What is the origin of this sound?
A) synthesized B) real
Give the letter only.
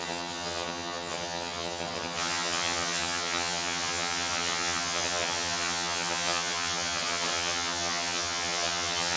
A